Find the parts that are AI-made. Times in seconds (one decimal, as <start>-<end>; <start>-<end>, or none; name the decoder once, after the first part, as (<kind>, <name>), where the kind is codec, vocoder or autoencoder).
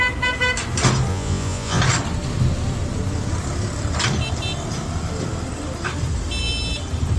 1.1-1.8 (vocoder, Vocos)